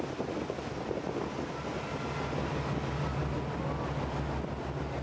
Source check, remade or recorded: recorded